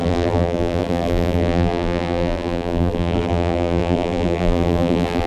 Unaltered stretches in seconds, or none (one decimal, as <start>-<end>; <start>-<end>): none